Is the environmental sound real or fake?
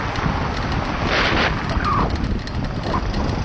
real